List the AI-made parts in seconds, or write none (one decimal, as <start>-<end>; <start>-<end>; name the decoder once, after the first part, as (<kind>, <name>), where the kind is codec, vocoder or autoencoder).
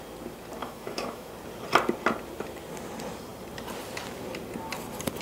0.6-1.3 (autoencoder, DAC-VAE)